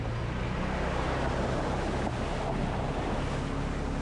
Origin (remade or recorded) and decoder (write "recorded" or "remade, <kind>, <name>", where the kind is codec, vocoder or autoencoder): recorded